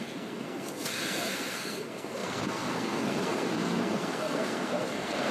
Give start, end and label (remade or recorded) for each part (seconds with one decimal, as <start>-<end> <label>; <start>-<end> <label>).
0.0-5.3 remade